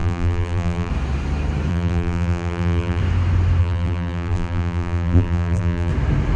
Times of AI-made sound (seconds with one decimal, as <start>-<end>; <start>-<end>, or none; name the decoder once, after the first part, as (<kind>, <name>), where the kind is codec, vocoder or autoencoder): 0.0-0.9 (vocoder, BigVGAN v2); 1.7-3.0; 3.6-5.9